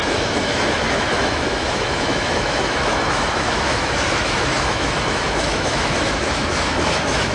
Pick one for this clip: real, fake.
fake